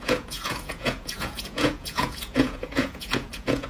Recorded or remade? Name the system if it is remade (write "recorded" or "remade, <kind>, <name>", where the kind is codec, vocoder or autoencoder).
remade, vocoder, Vocos